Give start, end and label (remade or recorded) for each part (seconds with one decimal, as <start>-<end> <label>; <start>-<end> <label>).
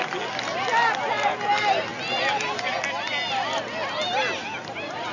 0.0-5.1 recorded